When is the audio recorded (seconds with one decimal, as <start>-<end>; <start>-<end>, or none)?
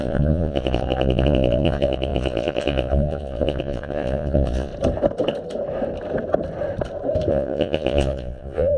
4.7-7.3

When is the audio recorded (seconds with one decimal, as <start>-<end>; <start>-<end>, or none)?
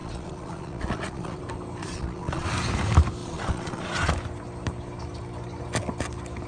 1.4-1.8; 2.5-3.2; 4.1-6.5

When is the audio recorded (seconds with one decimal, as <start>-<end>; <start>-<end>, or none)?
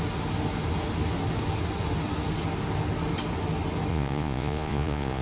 0.0-3.9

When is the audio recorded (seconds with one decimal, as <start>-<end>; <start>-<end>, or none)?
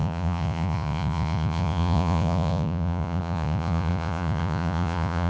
none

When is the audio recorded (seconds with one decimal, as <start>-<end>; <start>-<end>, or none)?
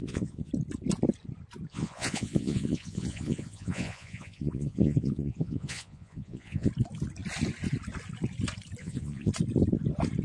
0.5-1.7; 6.7-8.8; 9.3-10.2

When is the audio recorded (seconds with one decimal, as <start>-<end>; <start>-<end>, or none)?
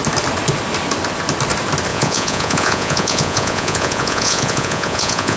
0.0-1.9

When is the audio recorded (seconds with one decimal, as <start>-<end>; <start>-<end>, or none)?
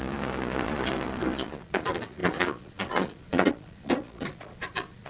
none